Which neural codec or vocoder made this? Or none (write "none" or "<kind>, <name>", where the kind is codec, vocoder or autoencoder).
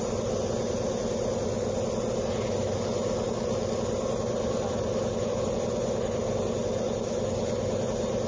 none